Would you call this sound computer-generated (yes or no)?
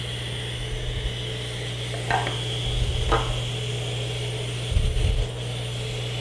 no